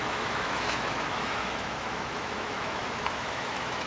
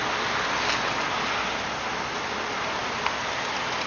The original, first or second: second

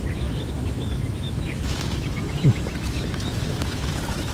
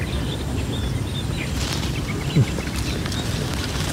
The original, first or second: second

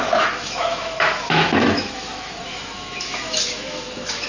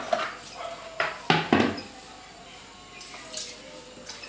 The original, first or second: second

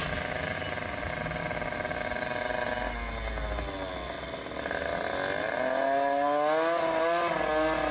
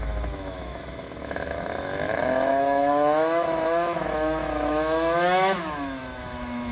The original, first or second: first